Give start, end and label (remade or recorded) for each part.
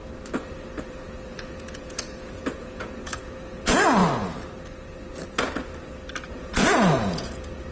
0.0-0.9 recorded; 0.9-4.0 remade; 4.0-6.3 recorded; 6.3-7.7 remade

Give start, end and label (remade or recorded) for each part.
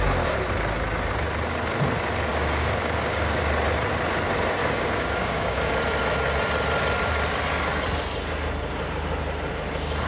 0.0-2.3 recorded; 2.3-3.4 remade; 3.4-4.6 recorded; 4.6-5.8 remade; 5.8-10.1 recorded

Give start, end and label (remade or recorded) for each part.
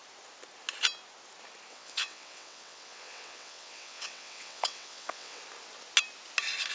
0.0-1.7 recorded; 1.7-5.4 remade; 5.4-6.7 recorded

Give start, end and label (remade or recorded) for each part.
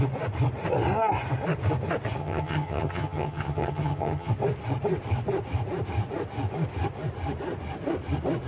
0.0-2.2 recorded; 2.2-4.3 remade; 4.3-8.5 recorded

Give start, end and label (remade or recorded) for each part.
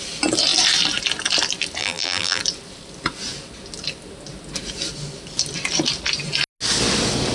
0.0-1.8 recorded; 1.8-2.4 remade; 2.4-7.3 recorded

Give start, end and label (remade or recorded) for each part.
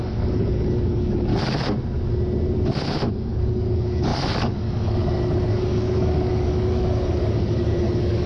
0.0-1.3 remade; 1.3-3.1 recorded; 3.1-8.3 remade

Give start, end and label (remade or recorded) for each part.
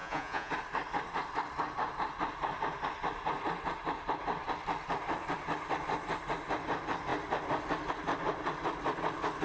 0.0-0.5 remade; 0.5-9.4 recorded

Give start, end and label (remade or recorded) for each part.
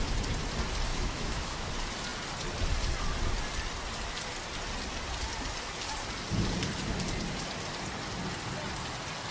0.0-0.9 recorded; 0.9-1.7 remade; 1.7-9.3 recorded